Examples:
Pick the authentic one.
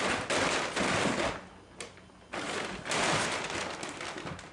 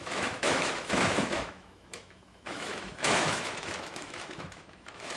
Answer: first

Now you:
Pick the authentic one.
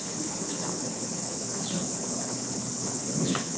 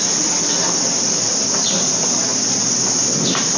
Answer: second